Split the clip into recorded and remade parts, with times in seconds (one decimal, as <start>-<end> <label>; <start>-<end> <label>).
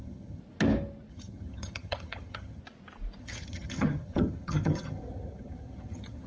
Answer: 0.0-0.4 remade; 0.4-1.1 recorded; 1.1-2.6 remade; 2.6-3.2 recorded; 3.2-6.3 remade